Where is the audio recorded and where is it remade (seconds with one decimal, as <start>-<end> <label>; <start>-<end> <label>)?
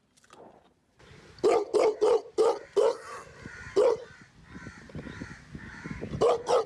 0.0-6.7 recorded